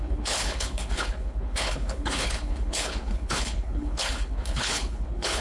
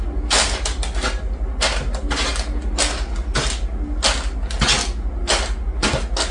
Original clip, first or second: second